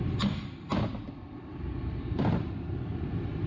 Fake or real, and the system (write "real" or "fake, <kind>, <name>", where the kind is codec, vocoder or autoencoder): fake, vocoder, BigVGAN v2